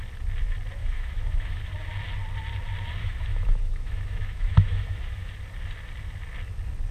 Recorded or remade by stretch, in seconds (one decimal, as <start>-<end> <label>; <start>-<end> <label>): 0.0-0.8 recorded; 0.8-1.6 remade; 1.6-3.0 recorded; 3.0-5.3 remade; 5.3-6.9 recorded